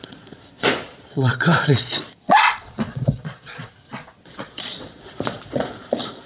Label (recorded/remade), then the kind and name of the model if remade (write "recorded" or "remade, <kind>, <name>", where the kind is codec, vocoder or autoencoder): remade, vocoder, Vocos